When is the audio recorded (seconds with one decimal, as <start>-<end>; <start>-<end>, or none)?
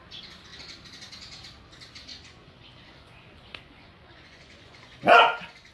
0.0-2.1